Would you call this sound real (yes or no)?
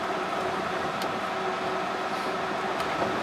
yes